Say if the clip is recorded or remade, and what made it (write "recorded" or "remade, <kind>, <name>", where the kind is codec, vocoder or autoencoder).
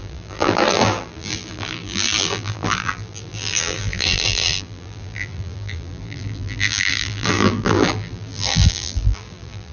remade, vocoder, BigVGAN v2